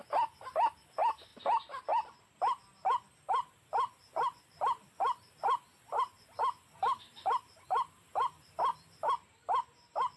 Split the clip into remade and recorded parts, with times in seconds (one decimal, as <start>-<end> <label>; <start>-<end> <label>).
0.0-1.3 recorded; 1.3-4.9 remade; 4.9-5.7 recorded; 5.7-7.9 remade; 7.9-10.2 recorded

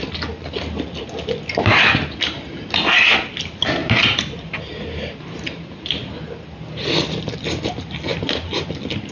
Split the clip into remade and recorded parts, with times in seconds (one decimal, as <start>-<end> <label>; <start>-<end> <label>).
0.0-3.8 recorded; 3.8-6.1 remade; 6.1-9.1 recorded

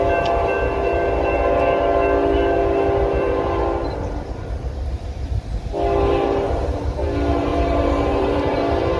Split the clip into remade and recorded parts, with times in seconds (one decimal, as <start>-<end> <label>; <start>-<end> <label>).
0.0-7.5 recorded; 7.5-8.6 remade; 8.6-9.0 recorded

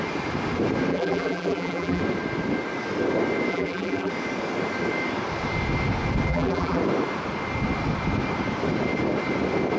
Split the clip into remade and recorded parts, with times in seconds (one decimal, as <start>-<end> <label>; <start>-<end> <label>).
0.0-0.9 recorded; 0.9-2.0 remade; 2.0-3.5 recorded; 3.5-4.1 remade; 4.1-6.3 recorded; 6.3-6.8 remade; 6.8-9.8 recorded

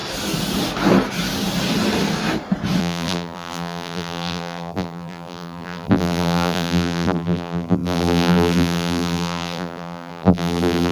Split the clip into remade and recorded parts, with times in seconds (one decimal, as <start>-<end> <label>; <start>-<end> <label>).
0.0-2.8 recorded; 2.8-10.9 remade

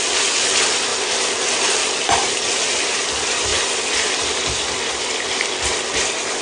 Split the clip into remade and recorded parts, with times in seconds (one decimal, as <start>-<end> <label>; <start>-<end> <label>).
0.0-1.8 recorded; 1.8-2.9 remade; 2.9-6.4 recorded